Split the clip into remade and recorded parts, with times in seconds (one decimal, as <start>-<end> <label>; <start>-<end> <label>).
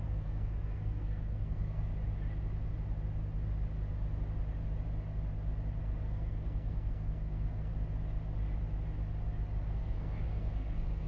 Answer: 0.0-1.9 remade; 1.9-5.8 recorded; 5.8-7.7 remade; 7.7-9.6 recorded; 9.6-11.1 remade